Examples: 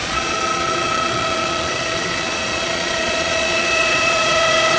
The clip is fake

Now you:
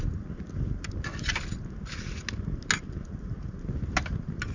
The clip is real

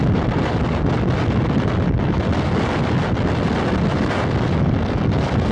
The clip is real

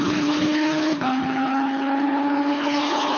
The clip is fake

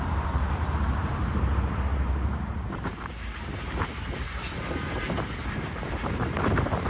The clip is fake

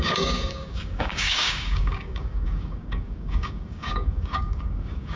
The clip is fake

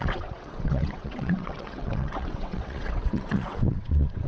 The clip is fake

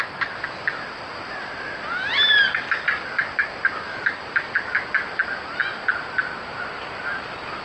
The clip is real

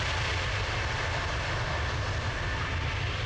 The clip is real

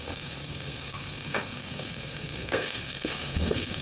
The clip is fake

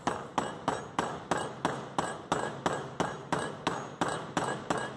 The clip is real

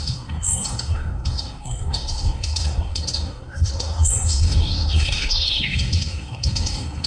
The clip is fake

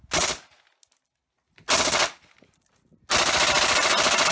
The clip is real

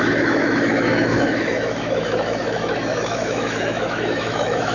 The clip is fake